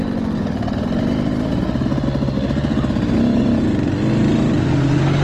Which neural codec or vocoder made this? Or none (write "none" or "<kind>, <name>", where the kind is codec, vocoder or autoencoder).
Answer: none